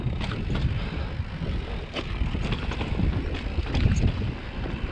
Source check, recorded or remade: recorded